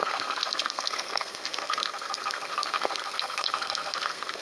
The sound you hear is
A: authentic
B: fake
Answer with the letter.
B